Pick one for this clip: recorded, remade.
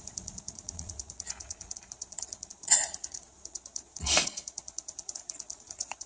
remade